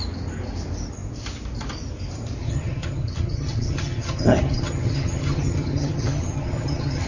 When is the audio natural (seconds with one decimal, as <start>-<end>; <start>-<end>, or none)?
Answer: 0.0-2.4